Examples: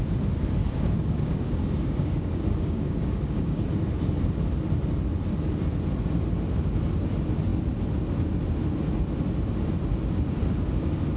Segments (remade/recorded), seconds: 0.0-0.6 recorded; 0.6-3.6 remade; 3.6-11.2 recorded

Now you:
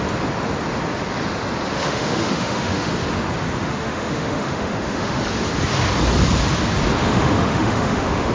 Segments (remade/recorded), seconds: 0.0-1.7 recorded; 1.7-2.9 remade; 2.9-3.6 recorded; 3.6-5.2 remade; 5.2-7.0 recorded; 7.0-8.3 remade

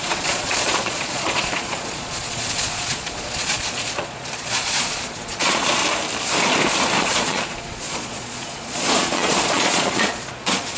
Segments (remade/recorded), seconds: 0.0-5.8 remade; 5.8-7.0 recorded; 7.0-10.8 remade

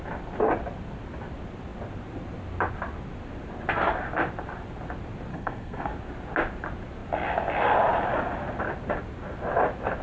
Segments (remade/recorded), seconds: 0.0-5.3 recorded; 5.3-5.9 remade; 5.9-10.0 recorded

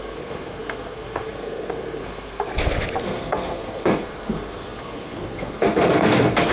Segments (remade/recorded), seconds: 0.0-2.5 remade; 2.5-3.0 recorded; 3.0-6.5 remade